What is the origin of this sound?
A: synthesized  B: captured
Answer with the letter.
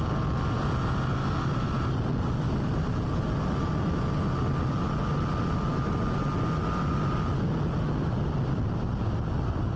B